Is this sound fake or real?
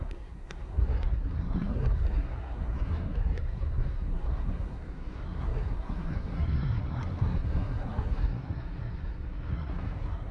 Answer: fake